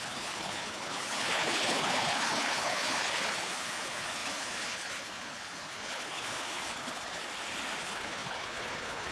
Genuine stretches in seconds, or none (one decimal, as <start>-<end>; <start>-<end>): 7.2-7.8